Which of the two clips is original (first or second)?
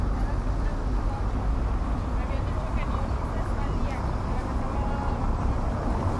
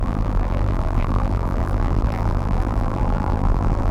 first